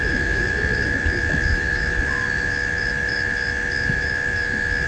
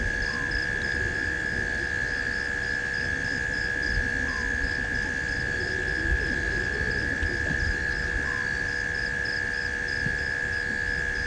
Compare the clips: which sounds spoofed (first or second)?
first